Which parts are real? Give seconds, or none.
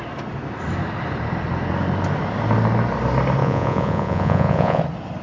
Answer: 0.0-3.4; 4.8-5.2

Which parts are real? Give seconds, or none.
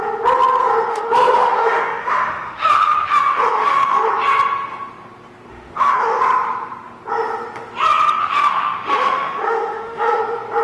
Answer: 0.0-0.9; 4.1-5.5; 6.2-8.2; 10.2-10.6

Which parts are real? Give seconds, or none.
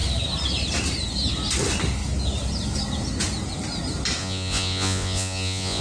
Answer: 0.0-4.2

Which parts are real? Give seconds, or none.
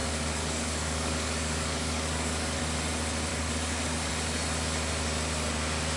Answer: 2.6-3.3; 4.1-6.0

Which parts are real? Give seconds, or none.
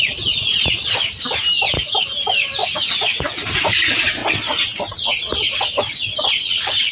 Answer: 0.0-2.6; 3.6-6.9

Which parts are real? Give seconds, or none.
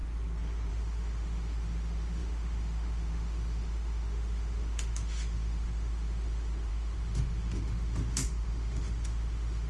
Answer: 0.0-0.7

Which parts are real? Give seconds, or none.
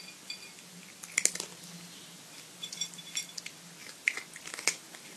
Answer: 0.0-1.5; 3.4-3.8